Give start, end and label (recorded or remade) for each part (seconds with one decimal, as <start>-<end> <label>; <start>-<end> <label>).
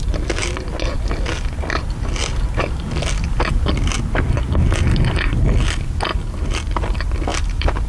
0.0-7.3 recorded; 7.3-7.9 remade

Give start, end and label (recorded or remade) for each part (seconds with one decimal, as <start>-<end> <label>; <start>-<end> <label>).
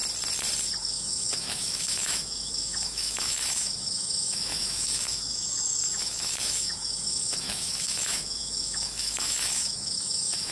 0.0-0.8 recorded; 0.8-10.5 remade